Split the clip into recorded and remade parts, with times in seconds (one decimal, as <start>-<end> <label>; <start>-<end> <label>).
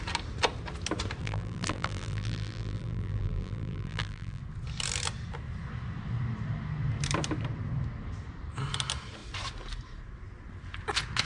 0.0-1.2 recorded; 1.2-4.4 remade; 4.4-11.3 recorded